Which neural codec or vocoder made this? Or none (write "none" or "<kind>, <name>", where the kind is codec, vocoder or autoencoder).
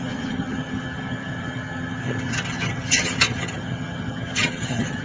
vocoder, HiFi-GAN